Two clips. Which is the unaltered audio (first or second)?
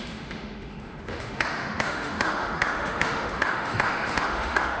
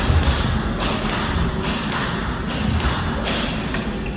second